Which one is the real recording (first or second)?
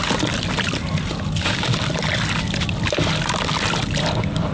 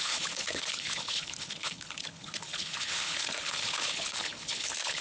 first